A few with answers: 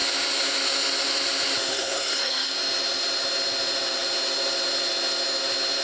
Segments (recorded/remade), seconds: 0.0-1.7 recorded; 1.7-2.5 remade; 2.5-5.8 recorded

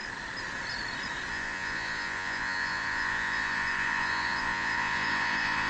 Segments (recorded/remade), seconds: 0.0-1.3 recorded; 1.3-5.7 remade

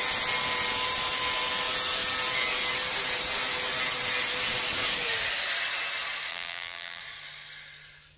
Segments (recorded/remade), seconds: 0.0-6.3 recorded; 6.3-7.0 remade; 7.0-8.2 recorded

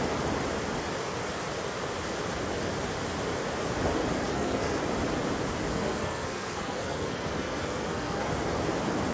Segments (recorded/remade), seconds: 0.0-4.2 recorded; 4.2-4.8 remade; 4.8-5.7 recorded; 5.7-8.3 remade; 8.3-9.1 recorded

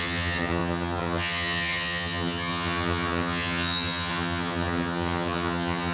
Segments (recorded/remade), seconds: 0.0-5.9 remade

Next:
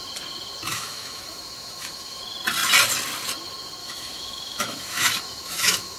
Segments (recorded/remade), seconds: 0.0-0.7 recorded; 0.7-2.2 remade; 2.2-3.8 recorded; 3.8-6.0 remade